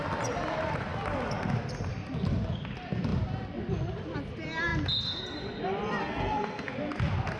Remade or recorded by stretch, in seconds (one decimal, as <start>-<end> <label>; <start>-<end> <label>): 0.0-6.0 recorded; 6.0-6.7 remade; 6.7-7.4 recorded